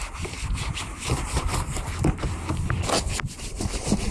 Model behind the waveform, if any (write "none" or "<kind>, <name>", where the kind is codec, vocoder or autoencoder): none